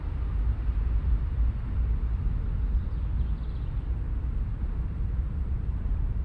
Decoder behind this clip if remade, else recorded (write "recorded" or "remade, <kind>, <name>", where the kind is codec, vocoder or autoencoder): recorded